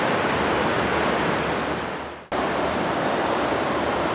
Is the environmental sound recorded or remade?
recorded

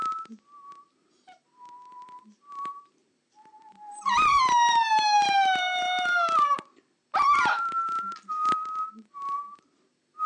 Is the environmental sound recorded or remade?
recorded